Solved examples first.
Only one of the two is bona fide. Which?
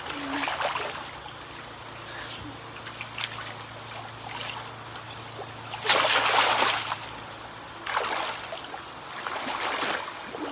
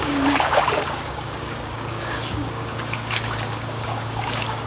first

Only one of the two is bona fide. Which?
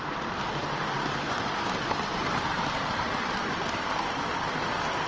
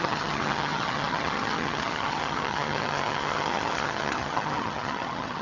first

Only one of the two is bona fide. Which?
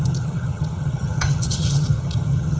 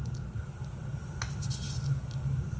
second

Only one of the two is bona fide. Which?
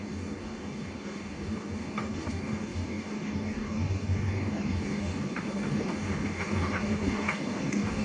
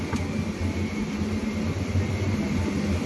second